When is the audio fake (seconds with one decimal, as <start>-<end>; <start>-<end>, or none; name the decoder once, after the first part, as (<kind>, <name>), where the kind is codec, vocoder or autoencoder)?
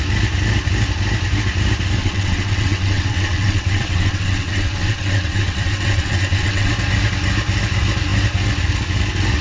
2.0-6.7 (vocoder, WaveNeXt)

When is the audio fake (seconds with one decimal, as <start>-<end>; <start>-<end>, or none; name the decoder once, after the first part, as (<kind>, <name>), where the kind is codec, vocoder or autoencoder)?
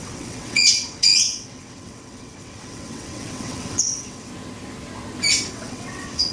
0.0-4.3 (vocoder, WaveNeXt); 5.5-6.3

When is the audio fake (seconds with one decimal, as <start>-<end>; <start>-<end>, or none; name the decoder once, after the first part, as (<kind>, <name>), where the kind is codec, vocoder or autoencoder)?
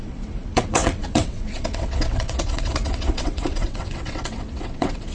0.0-5.1 (vocoder, WaveNeXt)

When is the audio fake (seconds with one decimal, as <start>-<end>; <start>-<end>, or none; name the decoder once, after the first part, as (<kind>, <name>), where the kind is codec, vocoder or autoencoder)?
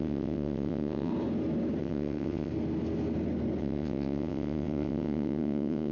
0.0-1.1 (vocoder, WaveNeXt); 1.8-2.5; 3.6-5.9